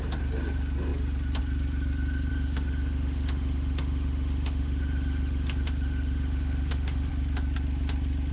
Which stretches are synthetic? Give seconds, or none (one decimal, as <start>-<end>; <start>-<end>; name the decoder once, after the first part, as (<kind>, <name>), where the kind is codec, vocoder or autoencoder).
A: 2.3-7.1 (autoencoder, DAC-VAE)